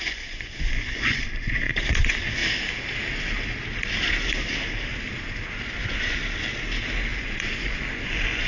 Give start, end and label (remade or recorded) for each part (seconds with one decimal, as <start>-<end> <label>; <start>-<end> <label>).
0.0-2.4 remade; 2.4-5.8 recorded; 5.8-6.2 remade; 6.2-7.2 recorded; 7.2-8.5 remade